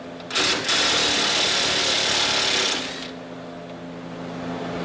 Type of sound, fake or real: real